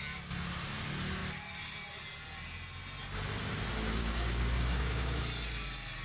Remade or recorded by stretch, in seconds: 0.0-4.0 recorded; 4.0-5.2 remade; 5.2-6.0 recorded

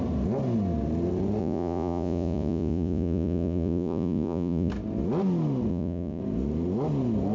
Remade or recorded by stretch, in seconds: 0.0-1.4 recorded; 1.4-4.7 remade; 4.7-5.7 recorded; 5.7-6.2 remade; 6.2-7.3 recorded